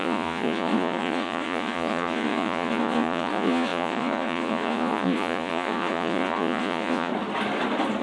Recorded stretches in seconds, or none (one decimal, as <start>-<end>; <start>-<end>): 7.1-8.0